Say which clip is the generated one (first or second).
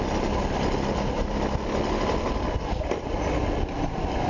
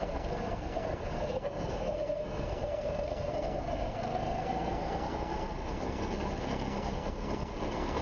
second